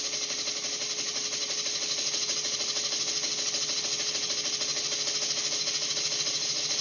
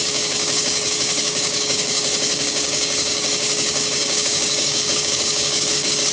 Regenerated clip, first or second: second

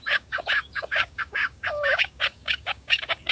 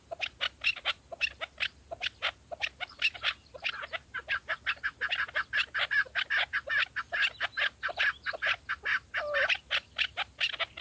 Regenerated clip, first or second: first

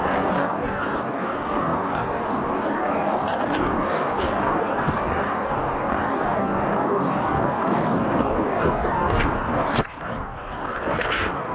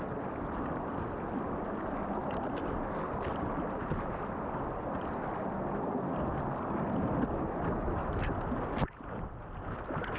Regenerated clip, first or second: first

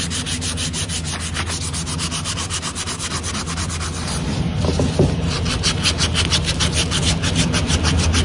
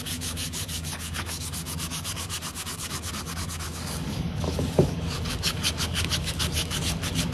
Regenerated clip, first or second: second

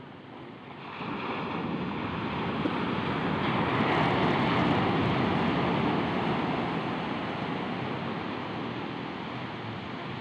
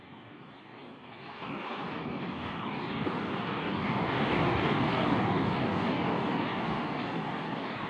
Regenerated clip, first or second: second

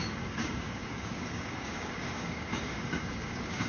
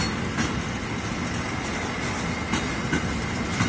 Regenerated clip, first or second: first